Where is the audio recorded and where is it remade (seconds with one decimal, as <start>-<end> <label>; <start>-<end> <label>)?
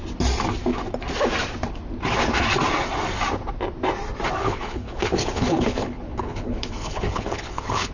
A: 0.0-4.4 recorded; 4.4-7.9 remade